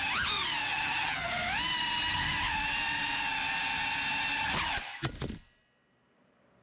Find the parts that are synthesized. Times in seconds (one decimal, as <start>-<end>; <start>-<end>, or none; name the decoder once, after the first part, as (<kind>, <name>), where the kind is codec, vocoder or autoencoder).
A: 0.7-1.3 (vocoder, HiFi-GAN)